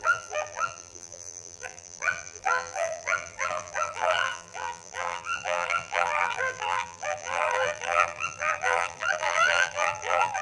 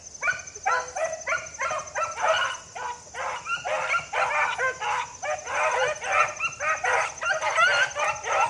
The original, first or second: second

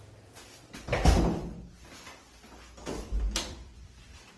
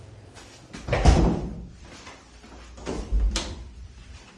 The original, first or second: first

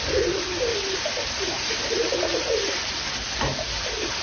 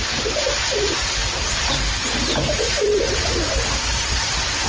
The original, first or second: first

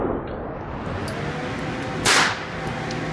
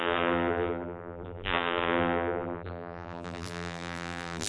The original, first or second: first